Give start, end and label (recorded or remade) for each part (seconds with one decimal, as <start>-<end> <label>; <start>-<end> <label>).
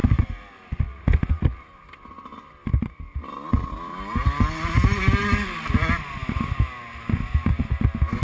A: 0.0-8.2 recorded